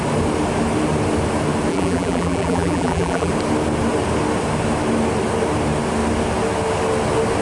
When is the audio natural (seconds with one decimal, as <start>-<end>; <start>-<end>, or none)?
0.0-1.7; 3.3-7.4